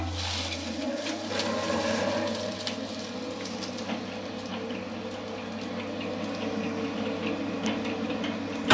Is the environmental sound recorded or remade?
recorded